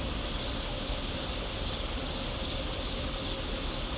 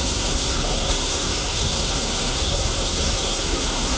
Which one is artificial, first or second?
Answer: second